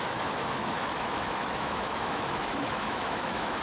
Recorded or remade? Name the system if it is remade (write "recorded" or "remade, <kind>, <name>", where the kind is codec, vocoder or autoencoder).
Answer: remade, autoencoder, DAC-VAE